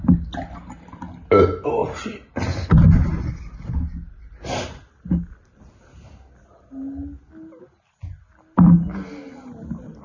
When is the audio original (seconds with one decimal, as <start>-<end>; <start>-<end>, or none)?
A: 0.0-10.0